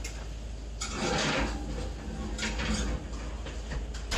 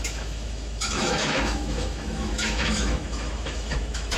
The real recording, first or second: first